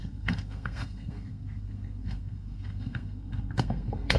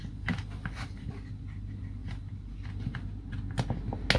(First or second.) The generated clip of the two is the first